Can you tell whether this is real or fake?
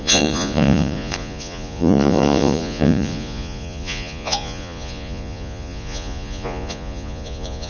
fake